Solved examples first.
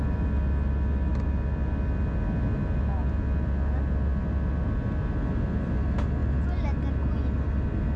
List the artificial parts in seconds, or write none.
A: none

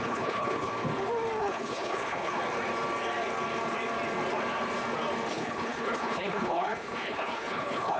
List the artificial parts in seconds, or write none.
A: 0.0-0.7 (codec, HILCodec); 1.4-2.4; 5.3-8.0

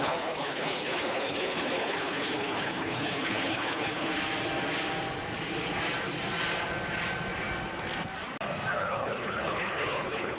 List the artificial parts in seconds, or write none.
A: 0.0-4.1 (codec, HILCodec); 8.7-10.4

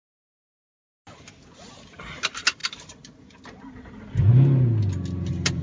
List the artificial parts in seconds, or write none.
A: none

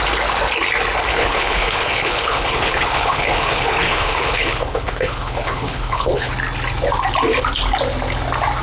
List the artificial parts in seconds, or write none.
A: 1.1-6.3 (codec, HILCodec)

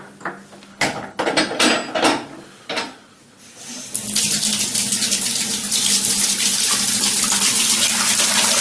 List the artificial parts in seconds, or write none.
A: 0.7-1.3 (codec, HILCodec)

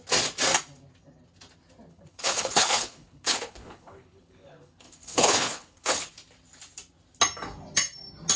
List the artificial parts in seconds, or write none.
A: 1.9-6.1 (codec, HILCodec)

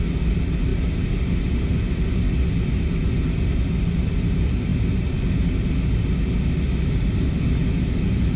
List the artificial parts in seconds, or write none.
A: none